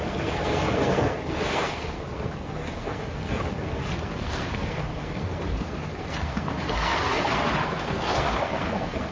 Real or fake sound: fake